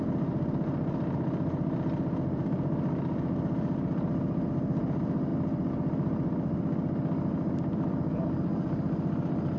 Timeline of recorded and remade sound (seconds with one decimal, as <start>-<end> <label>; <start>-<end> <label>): 0.0-9.6 recorded